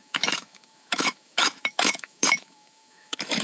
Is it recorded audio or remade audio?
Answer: remade